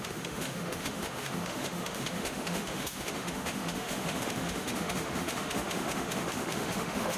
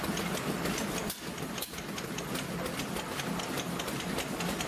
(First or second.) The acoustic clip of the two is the second